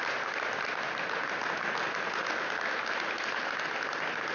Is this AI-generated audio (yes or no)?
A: no